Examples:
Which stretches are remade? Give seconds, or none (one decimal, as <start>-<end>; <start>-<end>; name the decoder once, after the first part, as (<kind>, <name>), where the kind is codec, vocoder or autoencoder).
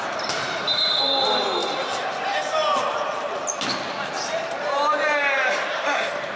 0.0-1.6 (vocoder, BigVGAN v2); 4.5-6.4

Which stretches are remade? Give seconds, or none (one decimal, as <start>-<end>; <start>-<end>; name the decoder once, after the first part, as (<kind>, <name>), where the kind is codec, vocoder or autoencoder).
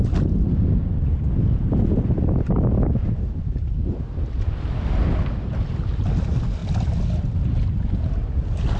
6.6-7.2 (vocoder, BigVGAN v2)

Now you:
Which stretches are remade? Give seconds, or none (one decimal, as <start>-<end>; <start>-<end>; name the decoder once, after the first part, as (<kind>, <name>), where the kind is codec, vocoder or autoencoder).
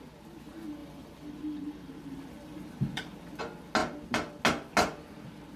0.8-3.4 (vocoder, BigVGAN v2); 3.8-4.4